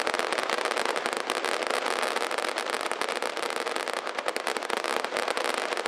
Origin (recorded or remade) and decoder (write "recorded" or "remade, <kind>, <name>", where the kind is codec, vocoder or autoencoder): recorded